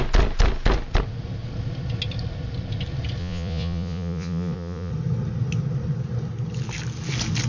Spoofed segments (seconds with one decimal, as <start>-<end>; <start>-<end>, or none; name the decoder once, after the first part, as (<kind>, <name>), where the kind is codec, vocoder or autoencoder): 3.2-4.9 (vocoder, Vocos)